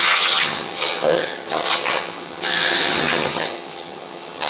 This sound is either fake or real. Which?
fake